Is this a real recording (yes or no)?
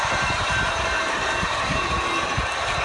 no